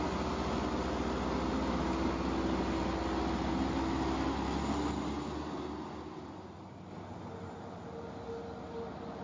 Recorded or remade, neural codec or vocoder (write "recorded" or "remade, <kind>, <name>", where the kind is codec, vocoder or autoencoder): recorded